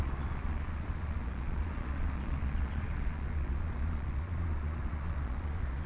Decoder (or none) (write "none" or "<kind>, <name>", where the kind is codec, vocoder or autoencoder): vocoder, Vocos